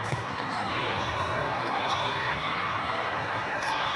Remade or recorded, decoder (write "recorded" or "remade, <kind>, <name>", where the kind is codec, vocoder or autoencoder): remade, codec, SNAC